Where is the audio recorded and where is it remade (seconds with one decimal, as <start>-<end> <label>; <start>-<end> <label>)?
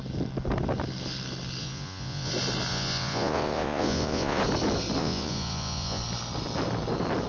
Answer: 0.0-1.6 recorded; 1.6-2.3 remade; 2.3-2.7 recorded; 2.7-4.4 remade; 4.4-5.0 recorded; 5.0-6.0 remade; 6.0-7.3 recorded